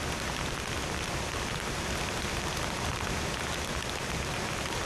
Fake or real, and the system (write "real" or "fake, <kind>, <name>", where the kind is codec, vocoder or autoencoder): real